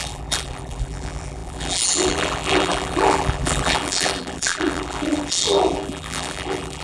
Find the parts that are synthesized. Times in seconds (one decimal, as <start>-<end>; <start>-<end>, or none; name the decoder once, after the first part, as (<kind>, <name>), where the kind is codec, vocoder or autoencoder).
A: 0.0-6.8 (vocoder, BigVGAN v2)